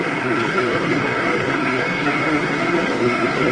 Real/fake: fake